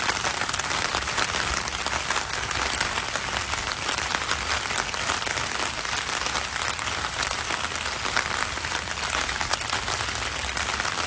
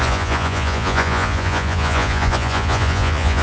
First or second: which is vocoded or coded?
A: second